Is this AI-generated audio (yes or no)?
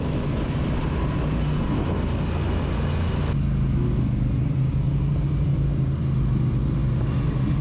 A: no